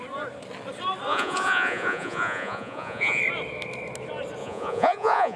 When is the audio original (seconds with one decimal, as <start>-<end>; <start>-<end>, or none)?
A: 0.0-1.1; 3.2-4.4